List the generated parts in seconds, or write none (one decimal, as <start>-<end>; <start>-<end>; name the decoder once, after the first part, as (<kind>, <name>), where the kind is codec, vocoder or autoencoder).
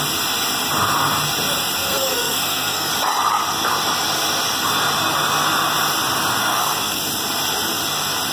1.8-2.9 (codec, SNAC); 6.4-7.0